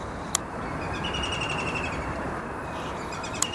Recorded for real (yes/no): no